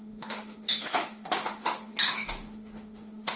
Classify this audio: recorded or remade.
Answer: remade